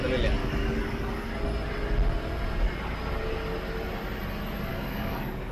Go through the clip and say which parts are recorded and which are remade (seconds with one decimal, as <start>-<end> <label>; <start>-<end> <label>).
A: 0.0-0.4 recorded; 0.4-1.3 remade; 1.3-4.7 recorded; 4.7-5.5 remade